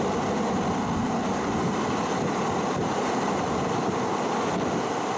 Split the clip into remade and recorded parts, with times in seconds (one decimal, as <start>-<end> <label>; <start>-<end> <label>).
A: 0.0-5.2 recorded